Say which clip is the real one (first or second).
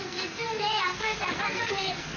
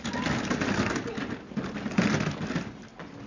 second